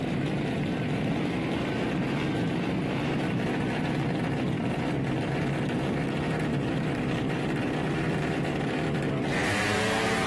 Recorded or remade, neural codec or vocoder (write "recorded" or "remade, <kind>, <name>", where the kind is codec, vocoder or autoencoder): remade, vocoder, BigVGAN v2